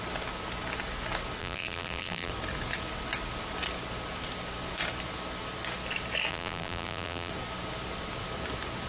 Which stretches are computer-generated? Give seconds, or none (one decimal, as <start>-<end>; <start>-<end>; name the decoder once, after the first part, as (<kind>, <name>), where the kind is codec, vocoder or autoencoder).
1.4-2.3 (vocoder, BigVGAN v2); 6.3-7.3